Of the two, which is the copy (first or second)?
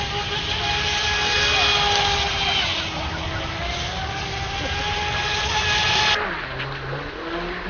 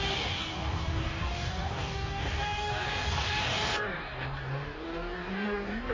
second